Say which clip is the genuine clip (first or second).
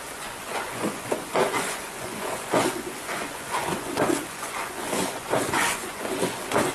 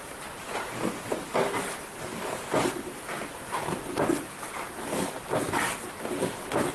second